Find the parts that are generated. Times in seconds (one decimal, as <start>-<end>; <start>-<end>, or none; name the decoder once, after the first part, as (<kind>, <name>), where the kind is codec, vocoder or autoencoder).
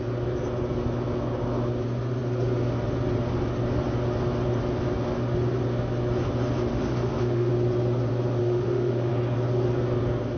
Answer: 6.7-7.5 (autoencoder, DAC-VAE); 8.4-9.1